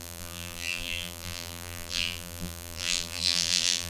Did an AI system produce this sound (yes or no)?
yes